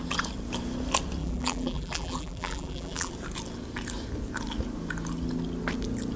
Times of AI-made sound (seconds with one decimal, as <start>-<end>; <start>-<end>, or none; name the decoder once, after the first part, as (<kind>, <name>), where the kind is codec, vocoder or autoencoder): 1.2-3.1 (vocoder, BigVGAN v2)